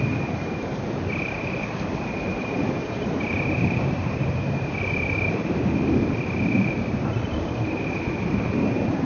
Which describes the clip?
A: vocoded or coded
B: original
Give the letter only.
A